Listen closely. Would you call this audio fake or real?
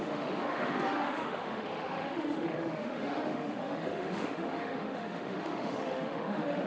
fake